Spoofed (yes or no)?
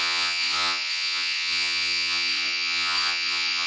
yes